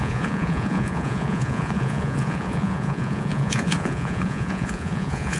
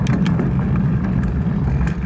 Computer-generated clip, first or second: first